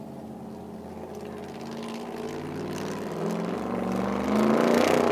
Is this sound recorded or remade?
recorded